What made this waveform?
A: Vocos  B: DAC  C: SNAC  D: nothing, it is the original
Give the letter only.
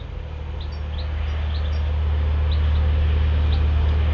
D